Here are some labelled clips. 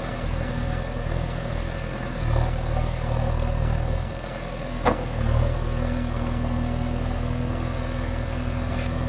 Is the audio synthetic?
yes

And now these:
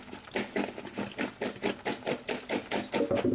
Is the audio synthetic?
no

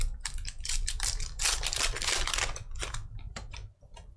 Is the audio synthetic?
yes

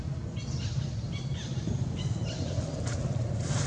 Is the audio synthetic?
no